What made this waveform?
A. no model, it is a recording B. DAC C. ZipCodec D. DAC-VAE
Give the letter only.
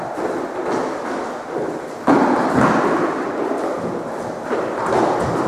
A